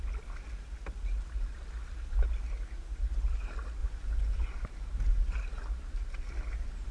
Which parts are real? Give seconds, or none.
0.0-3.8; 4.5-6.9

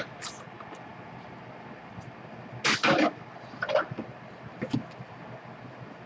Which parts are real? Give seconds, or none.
0.0-6.1

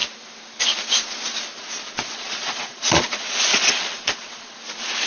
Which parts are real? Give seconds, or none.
0.0-1.5; 4.6-5.1